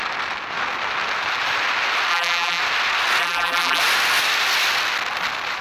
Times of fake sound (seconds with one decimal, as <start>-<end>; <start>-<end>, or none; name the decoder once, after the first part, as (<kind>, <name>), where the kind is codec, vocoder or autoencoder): 2.1-2.6 (vocoder, BigVGAN v2); 3.2-3.8